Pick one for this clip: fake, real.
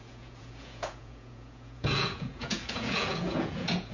fake